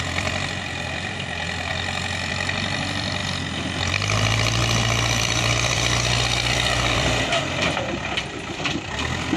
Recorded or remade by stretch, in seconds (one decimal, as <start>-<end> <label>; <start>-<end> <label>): 0.0-1.7 remade; 1.7-2.3 recorded; 2.3-3.2 remade; 3.2-3.9 recorded; 3.9-9.4 remade